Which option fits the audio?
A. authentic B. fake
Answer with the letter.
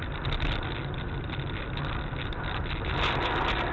A